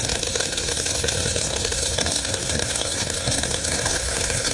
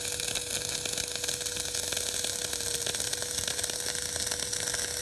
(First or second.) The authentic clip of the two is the second